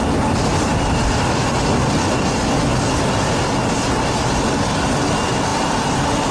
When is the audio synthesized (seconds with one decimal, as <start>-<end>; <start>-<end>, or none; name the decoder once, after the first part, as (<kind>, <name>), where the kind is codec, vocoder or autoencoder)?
none